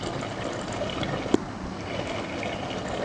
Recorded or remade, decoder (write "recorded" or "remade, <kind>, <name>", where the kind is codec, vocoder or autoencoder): recorded